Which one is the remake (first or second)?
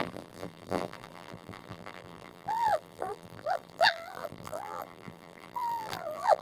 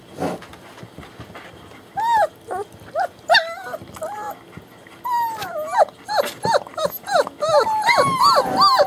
first